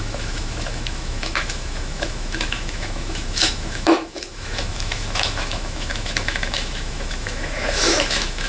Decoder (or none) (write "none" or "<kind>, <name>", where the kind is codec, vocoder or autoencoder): autoencoder, DAC-VAE